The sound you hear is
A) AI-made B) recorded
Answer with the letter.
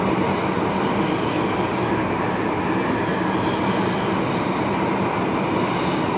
B